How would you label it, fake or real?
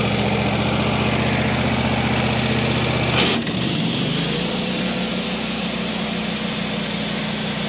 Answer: real